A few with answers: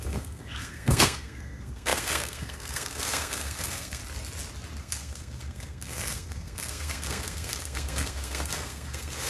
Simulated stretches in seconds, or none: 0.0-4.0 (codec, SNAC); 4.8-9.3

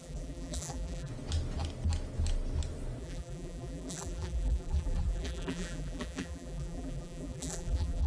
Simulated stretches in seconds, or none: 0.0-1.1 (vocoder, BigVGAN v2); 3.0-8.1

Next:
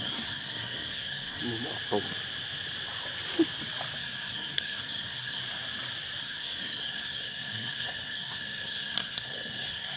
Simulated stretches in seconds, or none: 0.0-1.4 (codec, SNAC); 4.0-5.4; 6.2-10.0